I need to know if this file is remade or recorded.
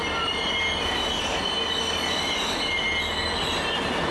recorded